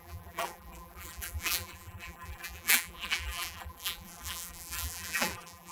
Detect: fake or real fake